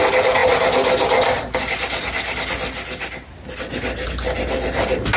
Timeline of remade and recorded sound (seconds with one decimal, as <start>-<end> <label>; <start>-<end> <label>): 0.0-5.2 recorded